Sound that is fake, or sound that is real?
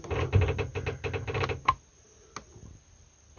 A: real